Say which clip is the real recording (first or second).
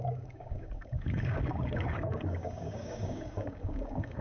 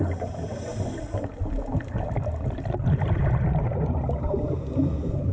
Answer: second